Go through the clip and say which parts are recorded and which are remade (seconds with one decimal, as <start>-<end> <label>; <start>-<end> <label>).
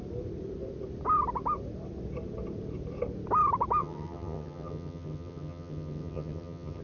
0.0-3.8 recorded; 3.8-6.8 remade